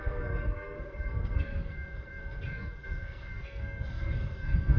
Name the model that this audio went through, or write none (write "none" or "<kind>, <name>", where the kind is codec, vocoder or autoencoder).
codec, SNAC